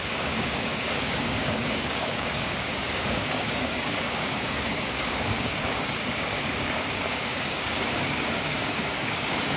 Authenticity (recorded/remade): remade